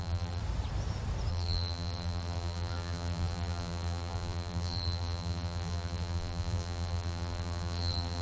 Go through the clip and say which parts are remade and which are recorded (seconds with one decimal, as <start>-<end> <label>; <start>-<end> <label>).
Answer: 0.0-0.4 remade; 0.4-1.3 recorded; 1.3-8.2 remade